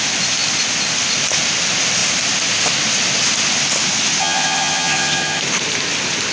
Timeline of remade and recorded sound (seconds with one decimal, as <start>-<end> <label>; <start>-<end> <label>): 0.0-4.2 recorded; 4.2-5.4 remade; 5.4-6.3 recorded